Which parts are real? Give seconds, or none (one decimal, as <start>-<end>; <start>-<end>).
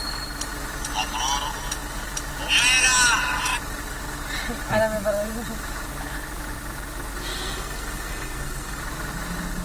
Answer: 0.0-7.3; 8.8-9.6